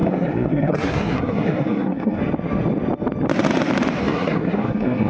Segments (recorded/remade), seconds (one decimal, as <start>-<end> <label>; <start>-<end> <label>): 0.0-2.2 remade; 2.2-4.0 recorded; 4.0-5.1 remade